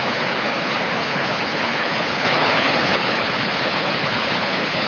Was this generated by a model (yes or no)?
yes